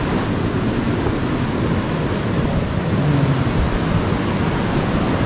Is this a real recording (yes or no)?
yes